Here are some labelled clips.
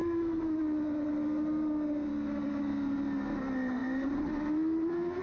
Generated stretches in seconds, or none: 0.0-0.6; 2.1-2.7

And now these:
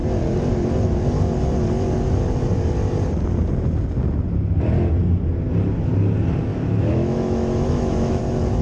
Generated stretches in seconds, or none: 6.5-8.2

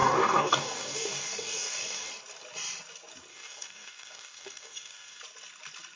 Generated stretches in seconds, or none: 0.0-2.1; 3.3-5.2

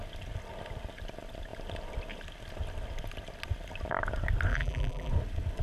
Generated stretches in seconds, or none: 4.5-5.1

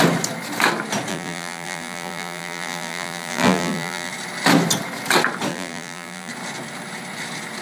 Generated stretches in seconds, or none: 1.1-4.1; 5.5-6.3

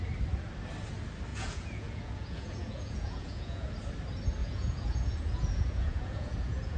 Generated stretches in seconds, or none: 1.3-3.7; 4.4-6.8

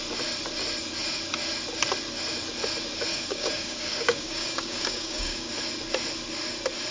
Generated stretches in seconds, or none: 3.1-5.5

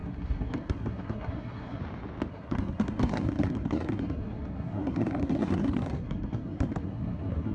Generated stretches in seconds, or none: 0.0-1.8; 2.3-7.5